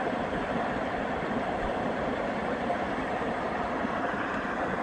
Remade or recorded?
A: remade